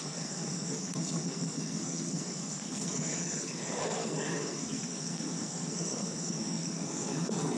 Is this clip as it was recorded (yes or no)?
no